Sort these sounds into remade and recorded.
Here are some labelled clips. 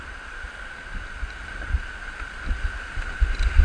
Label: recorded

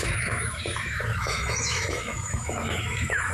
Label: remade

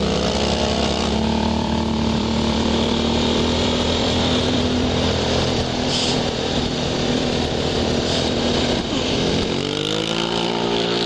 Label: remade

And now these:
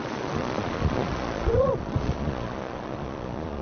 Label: remade